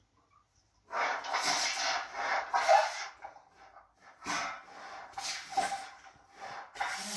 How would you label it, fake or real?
real